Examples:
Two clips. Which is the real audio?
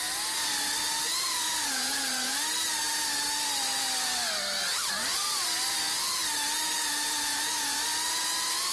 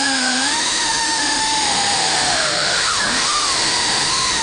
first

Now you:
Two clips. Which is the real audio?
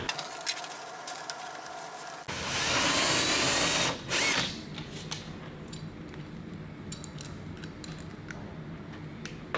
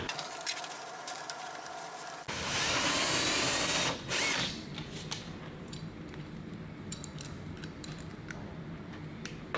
first